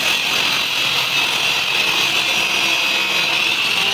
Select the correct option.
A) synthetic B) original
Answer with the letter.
B